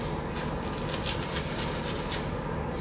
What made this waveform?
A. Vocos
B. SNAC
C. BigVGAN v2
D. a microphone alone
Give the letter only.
D